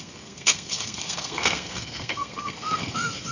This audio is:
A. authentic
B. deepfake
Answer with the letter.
B